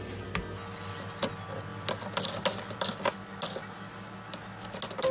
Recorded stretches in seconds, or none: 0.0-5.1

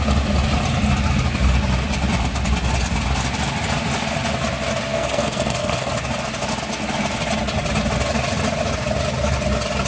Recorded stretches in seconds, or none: 0.0-4.9; 5.9-9.9

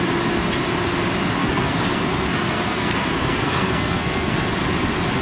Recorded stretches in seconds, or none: 0.0-1.4; 4.5-5.2

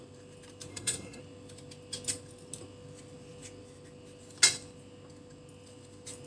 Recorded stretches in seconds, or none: 0.0-0.7; 1.2-6.3

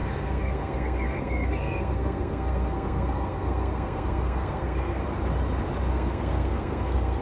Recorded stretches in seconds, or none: 5.0-5.9

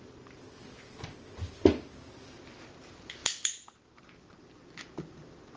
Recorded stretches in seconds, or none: 0.0-5.6